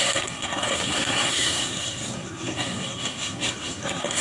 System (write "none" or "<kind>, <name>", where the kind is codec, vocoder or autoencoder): codec, SNAC